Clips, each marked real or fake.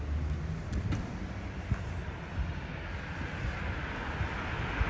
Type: real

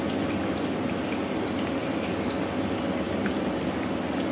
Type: real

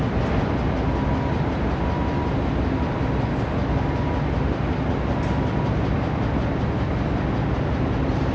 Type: real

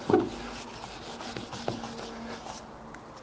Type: real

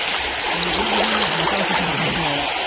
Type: real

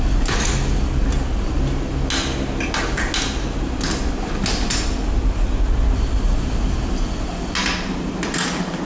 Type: real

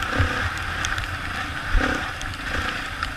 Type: real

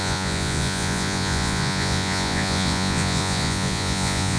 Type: fake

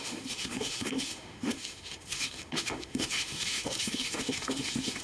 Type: fake